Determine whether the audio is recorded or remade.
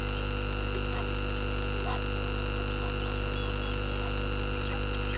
recorded